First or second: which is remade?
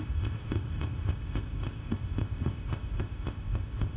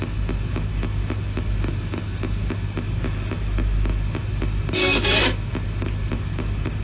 first